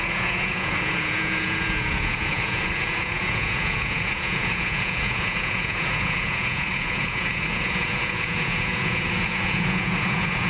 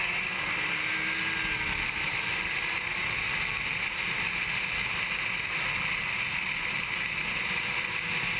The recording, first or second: second